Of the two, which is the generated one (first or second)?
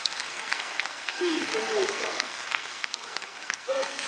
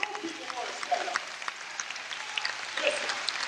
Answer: first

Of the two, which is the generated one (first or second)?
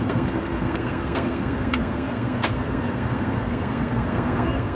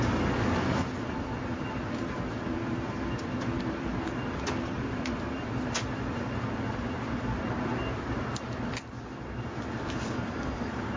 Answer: first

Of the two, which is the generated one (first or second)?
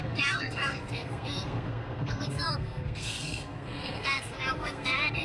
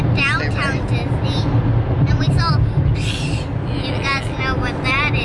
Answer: first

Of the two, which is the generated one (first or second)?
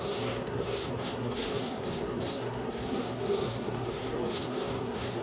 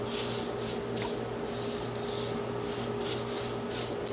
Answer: first